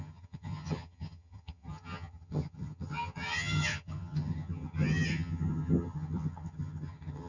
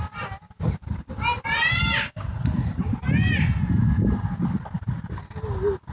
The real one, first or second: second